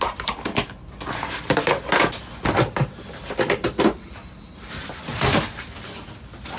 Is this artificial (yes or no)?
no